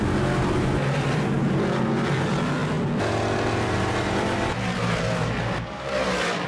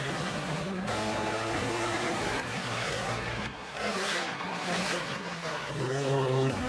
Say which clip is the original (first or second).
first